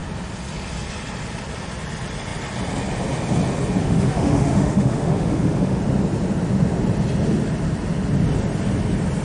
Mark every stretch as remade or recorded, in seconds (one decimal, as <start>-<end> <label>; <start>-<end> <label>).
0.0-3.8 recorded; 3.8-5.8 remade; 5.8-9.2 recorded